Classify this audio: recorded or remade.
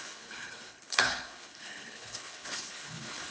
remade